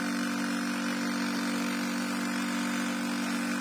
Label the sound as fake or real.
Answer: real